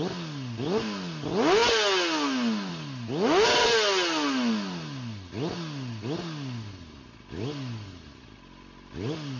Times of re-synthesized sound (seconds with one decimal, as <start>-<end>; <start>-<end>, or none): none